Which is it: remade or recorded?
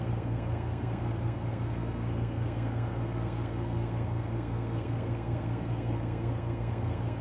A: remade